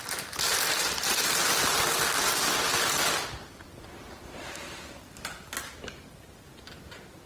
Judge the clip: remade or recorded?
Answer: recorded